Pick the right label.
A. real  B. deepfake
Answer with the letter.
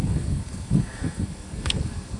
B